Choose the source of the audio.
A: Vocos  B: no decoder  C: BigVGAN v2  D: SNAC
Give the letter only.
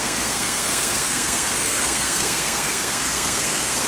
D